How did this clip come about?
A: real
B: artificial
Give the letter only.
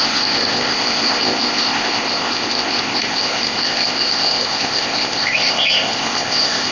B